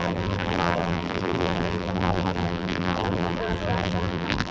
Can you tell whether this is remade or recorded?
remade